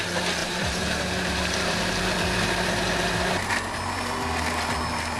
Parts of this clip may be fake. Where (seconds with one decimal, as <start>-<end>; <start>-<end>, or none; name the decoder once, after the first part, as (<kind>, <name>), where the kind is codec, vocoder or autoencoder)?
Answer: 0.4-3.5 (vocoder, BigVGAN v2)